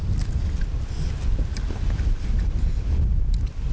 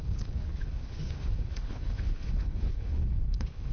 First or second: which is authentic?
first